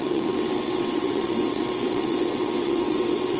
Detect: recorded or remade remade